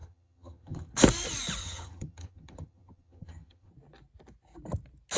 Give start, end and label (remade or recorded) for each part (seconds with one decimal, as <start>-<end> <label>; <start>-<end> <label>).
0.0-0.9 remade; 0.9-1.6 recorded; 1.6-3.7 remade; 3.7-5.2 recorded